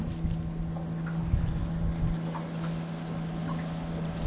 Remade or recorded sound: recorded